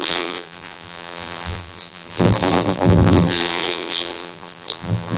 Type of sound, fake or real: fake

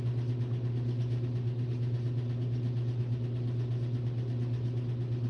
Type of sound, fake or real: real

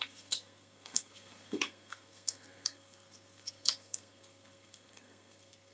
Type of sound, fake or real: fake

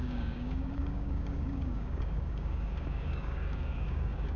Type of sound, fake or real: fake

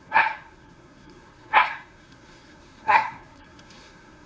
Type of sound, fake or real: fake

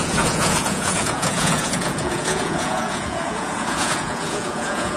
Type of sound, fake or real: fake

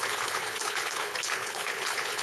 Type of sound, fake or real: fake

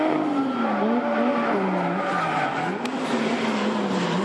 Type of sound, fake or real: real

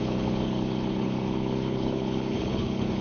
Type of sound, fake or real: fake